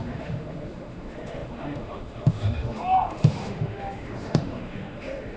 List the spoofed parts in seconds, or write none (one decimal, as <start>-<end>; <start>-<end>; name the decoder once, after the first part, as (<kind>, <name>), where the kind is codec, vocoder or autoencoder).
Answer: 0.0-5.4 (autoencoder, DAC-VAE)